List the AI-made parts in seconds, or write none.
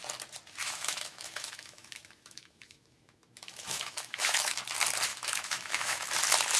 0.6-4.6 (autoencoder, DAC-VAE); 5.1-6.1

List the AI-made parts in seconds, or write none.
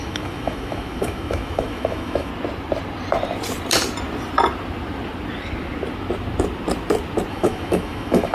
0.0-2.3 (autoencoder, DAC-VAE); 7.3-8.3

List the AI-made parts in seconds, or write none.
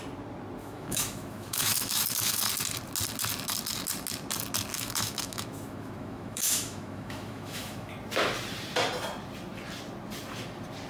0.6-2.4 (autoencoder, DAC-VAE); 4.7-7.9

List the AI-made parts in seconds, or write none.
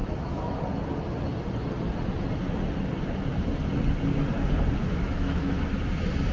0.0-0.6 (autoencoder, DAC-VAE); 4.8-5.6